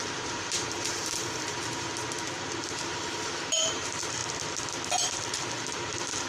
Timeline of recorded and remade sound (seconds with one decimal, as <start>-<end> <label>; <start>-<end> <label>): 0.0-4.2 remade; 4.2-4.9 recorded; 4.9-6.3 remade